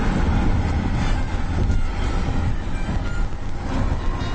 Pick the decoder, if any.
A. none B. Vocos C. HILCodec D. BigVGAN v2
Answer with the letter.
A